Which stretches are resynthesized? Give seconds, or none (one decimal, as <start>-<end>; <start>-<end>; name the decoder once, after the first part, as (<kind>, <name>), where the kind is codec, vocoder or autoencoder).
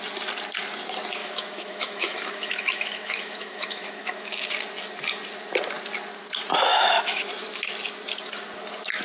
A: 1.2-4.4 (autoencoder, DAC-VAE); 6.7-7.3